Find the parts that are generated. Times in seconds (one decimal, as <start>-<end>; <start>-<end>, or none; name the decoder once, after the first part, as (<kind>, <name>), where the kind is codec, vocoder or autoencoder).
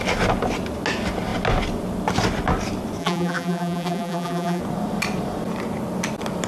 3.0-4.6 (vocoder, BigVGAN v2)